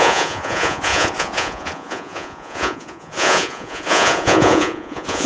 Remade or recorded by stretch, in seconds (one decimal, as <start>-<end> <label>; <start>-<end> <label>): 0.0-5.3 remade